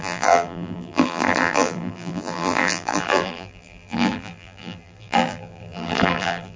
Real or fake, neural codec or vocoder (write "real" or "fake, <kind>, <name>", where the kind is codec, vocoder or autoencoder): fake, vocoder, BigVGAN v2